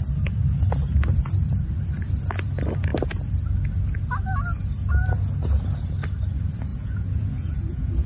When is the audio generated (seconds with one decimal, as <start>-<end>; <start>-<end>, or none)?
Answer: 6.7-8.1